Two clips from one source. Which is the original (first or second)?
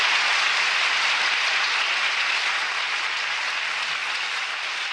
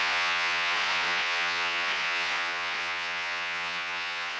first